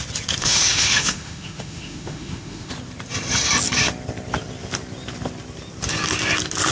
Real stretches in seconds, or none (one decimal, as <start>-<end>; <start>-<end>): 0.0-0.4; 2.7-6.7